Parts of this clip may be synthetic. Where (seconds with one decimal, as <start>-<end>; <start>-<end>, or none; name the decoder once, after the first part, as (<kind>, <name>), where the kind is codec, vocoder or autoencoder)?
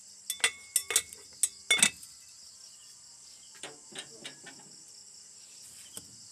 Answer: none